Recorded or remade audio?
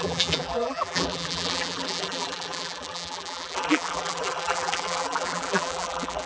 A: remade